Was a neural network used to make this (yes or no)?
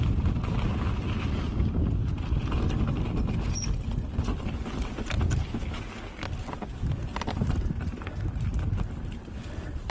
no